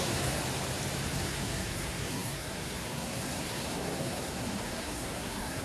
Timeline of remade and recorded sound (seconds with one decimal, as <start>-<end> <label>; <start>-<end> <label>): 0.0-0.4 remade; 0.4-1.1 recorded; 1.1-5.6 remade